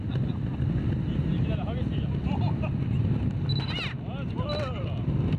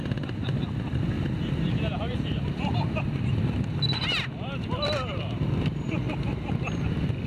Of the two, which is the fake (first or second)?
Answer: second